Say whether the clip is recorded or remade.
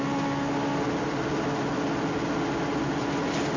recorded